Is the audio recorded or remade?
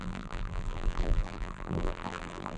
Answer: remade